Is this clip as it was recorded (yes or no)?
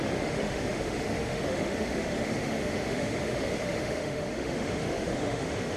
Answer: no